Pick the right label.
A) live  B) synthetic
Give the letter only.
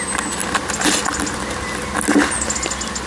A